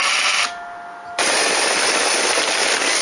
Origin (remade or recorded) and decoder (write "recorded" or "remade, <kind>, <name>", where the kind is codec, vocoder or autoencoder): recorded